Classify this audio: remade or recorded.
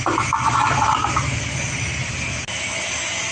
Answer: recorded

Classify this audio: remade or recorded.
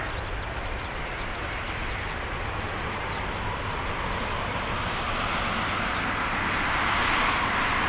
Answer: recorded